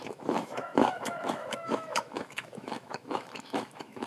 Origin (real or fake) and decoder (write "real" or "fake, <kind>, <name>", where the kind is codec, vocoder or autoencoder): fake, autoencoder, DAC-VAE